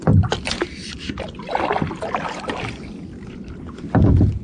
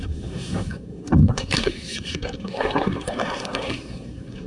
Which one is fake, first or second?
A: second